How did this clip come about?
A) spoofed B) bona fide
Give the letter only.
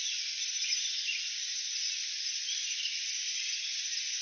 B